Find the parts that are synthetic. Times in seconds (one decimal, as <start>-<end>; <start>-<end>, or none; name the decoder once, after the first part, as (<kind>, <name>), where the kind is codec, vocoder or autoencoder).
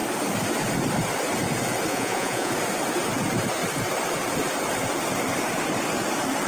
1.9-2.5 (vocoder, Vocos)